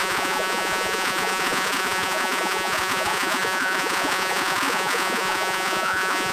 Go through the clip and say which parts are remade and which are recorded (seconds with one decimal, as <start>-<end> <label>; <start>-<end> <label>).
0.0-6.3 remade